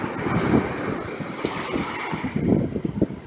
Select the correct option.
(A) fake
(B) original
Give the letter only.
B